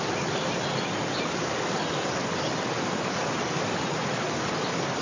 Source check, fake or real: real